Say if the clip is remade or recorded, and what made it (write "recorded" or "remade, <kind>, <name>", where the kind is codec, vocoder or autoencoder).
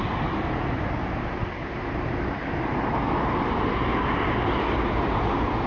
recorded